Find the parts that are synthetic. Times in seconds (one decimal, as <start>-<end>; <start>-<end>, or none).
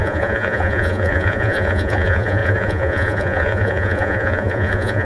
0.0-5.0